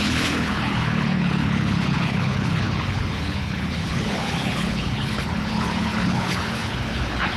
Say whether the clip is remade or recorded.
remade